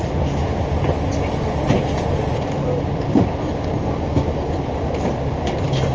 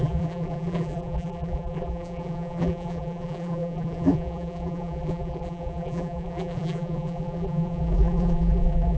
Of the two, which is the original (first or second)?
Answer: first